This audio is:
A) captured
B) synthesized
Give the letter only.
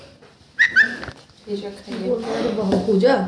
A